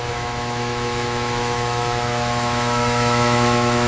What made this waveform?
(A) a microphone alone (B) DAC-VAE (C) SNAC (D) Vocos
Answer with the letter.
B